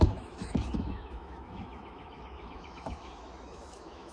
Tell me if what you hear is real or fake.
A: fake